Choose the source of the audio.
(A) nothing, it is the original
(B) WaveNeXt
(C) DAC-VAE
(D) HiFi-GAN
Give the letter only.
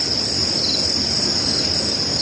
A